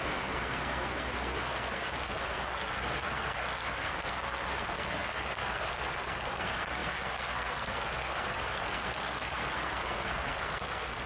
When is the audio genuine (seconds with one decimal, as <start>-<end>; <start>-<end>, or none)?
none